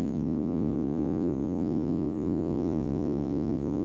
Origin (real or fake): fake